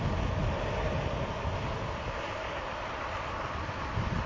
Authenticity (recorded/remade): recorded